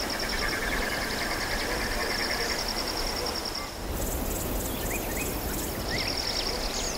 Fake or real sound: real